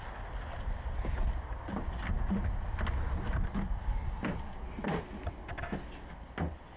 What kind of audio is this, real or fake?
real